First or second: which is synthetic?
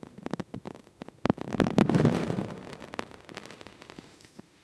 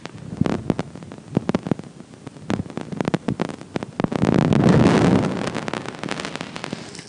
first